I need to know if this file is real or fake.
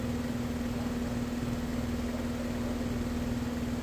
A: real